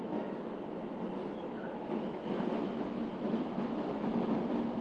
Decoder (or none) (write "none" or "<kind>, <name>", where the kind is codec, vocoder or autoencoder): autoencoder, DAC-VAE